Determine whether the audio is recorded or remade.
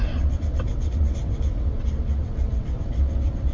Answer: remade